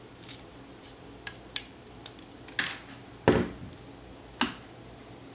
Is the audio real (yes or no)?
yes